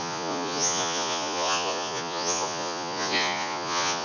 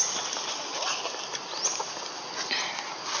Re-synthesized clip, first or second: first